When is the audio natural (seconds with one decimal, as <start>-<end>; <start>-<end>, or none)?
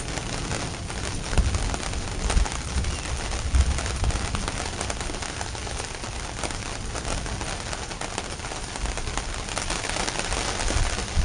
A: 0.0-11.2